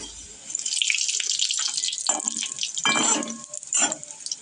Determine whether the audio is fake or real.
real